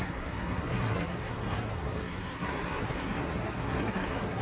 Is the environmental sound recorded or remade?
remade